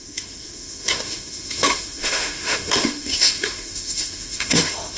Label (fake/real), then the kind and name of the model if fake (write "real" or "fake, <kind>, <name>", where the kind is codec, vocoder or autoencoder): fake, autoencoder, DAC-VAE